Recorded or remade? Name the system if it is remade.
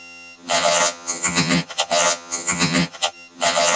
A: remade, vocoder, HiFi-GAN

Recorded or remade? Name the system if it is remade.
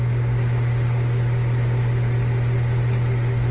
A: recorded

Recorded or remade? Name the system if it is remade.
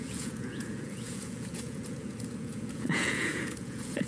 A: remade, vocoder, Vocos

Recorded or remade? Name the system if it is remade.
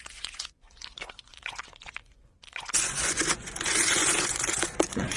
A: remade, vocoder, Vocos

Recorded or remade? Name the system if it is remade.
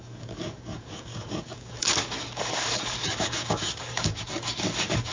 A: remade, codec, DAC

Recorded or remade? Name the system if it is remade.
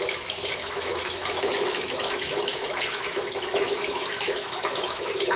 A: remade, autoencoder, DAC-VAE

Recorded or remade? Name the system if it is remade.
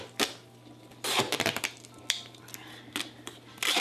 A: recorded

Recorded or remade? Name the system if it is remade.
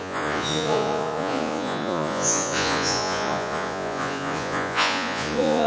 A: remade, vocoder, Vocos